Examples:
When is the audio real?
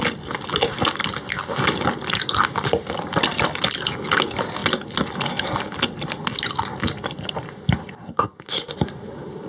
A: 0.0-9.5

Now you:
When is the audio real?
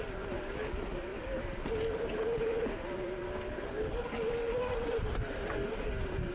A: 0.0-6.3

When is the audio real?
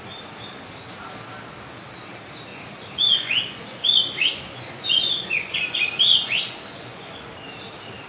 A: 0.0-2.5; 7.3-8.1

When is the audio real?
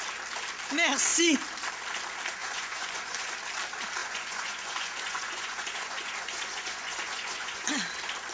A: 0.0-2.4; 3.3-4.0; 7.7-8.3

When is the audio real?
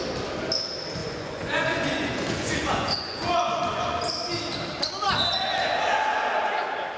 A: 0.0-1.0; 4.0-7.0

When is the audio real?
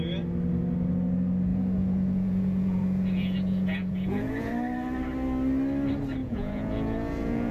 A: 0.0-1.5; 4.5-6.2